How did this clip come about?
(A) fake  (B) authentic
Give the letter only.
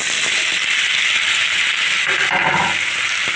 B